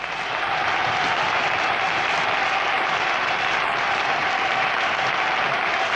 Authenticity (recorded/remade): recorded